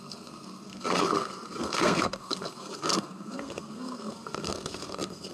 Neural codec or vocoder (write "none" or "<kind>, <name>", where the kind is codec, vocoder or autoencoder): codec, SNAC